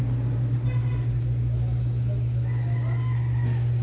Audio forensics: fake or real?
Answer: real